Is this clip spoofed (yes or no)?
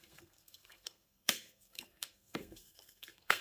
yes